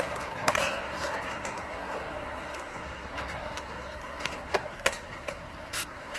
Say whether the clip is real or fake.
fake